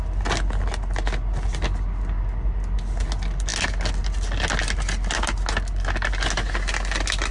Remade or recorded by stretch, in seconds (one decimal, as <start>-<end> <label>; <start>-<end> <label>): 0.0-7.3 recorded